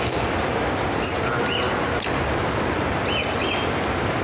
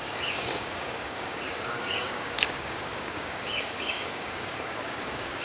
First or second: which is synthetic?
second